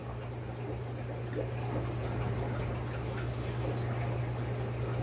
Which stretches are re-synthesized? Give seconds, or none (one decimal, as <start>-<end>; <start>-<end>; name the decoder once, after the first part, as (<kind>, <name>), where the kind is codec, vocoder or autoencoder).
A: none